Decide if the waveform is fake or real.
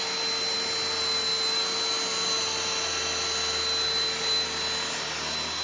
real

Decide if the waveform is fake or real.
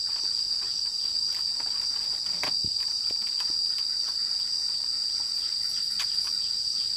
real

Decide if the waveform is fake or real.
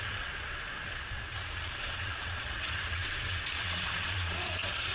fake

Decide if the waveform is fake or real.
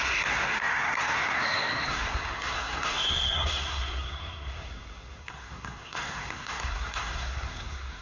fake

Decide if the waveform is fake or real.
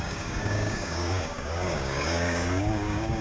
fake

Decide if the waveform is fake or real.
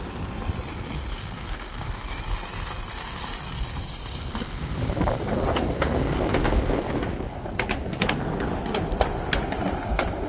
real